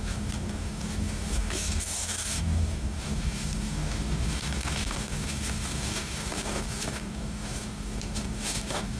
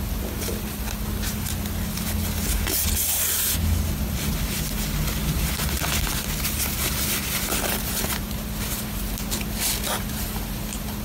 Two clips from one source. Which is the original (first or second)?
second